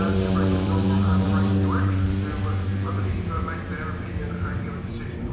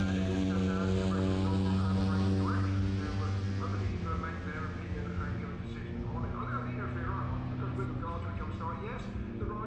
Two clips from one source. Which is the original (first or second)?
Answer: second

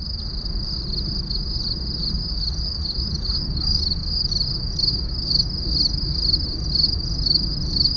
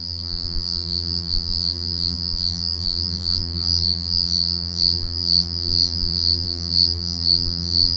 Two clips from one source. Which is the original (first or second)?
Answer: first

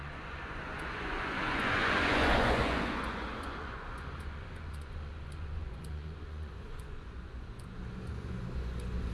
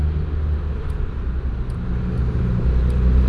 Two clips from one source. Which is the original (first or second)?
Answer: second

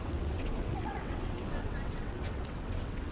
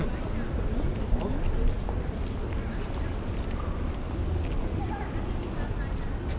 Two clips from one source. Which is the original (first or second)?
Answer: second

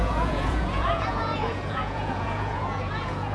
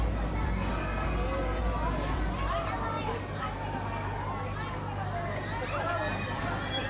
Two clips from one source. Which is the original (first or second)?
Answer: second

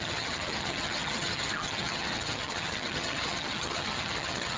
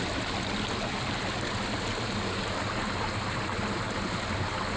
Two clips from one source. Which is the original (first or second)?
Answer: second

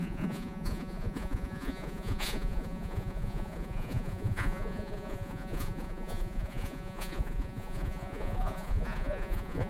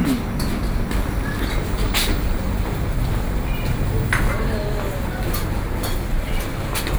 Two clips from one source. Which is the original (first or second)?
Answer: second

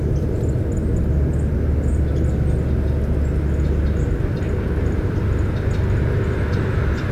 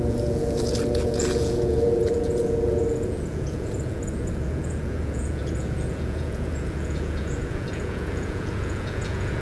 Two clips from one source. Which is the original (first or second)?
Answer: first